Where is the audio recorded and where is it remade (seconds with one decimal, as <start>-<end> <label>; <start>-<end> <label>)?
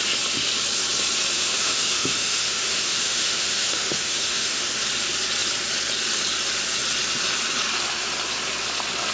0.0-1.3 recorded; 1.3-4.7 remade; 4.7-9.1 recorded